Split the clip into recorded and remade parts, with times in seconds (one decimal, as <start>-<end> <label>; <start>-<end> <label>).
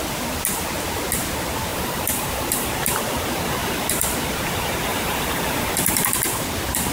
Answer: 0.0-1.7 recorded; 1.7-2.7 remade; 2.7-4.9 recorded; 4.9-6.1 remade; 6.1-6.9 recorded